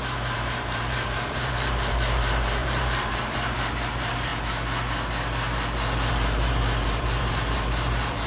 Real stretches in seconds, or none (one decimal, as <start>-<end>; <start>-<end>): 4.3-6.1